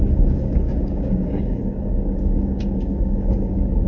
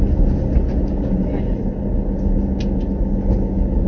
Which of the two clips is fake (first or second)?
first